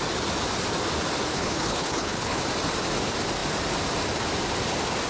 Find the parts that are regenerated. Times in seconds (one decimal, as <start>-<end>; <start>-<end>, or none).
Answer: 1.3-2.4